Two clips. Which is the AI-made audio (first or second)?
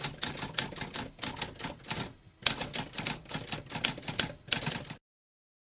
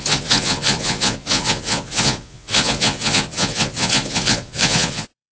second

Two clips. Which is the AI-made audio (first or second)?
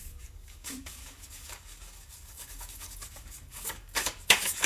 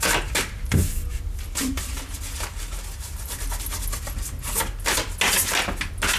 first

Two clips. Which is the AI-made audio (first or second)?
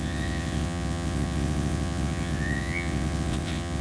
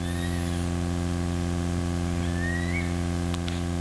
first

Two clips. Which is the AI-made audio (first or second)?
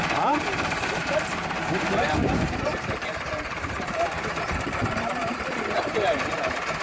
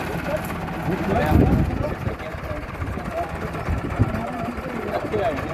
first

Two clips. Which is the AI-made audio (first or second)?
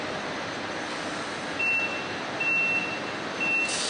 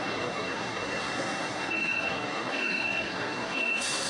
second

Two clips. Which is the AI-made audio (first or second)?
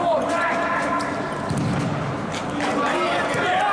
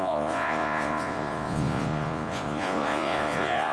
second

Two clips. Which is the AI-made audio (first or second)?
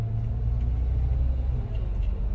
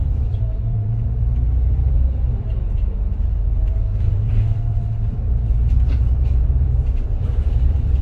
second